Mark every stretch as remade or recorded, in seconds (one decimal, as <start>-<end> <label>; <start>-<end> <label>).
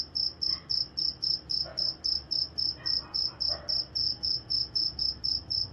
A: 0.0-4.0 recorded; 4.0-5.0 remade; 5.0-5.7 recorded